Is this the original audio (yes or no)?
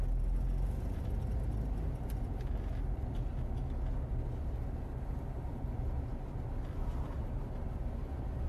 yes